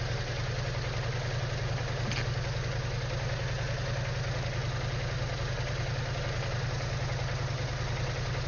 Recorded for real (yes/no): yes